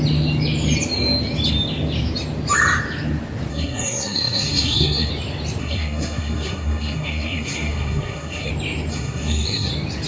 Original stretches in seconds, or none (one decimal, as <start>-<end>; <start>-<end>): 0.0-3.5; 5.1-5.6; 8.5-8.9; 9.7-10.1